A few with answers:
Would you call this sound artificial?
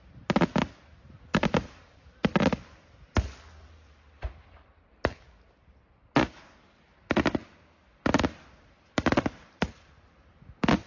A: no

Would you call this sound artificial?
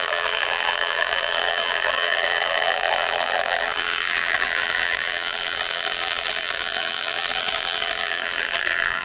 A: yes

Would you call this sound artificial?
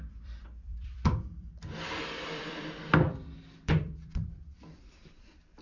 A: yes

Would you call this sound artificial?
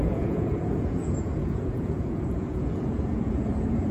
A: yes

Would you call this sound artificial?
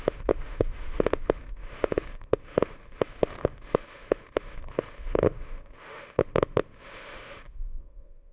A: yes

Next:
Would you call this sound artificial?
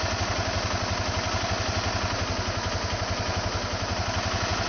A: no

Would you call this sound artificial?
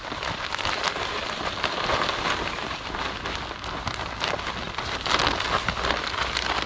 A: no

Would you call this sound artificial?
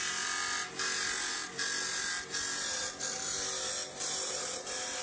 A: no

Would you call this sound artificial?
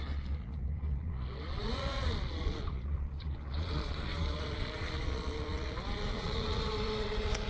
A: yes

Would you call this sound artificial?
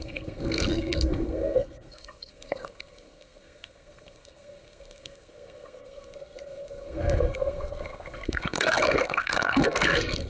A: yes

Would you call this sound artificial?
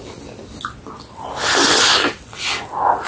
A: no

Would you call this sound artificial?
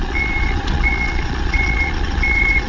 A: yes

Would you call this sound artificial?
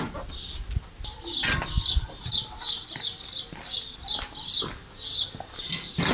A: no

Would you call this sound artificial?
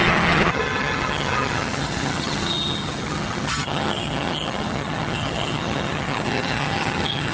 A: yes